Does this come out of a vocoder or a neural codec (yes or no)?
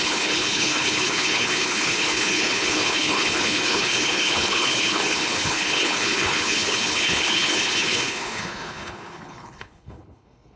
yes